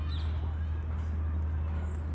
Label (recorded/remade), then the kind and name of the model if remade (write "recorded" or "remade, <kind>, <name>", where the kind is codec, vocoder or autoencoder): recorded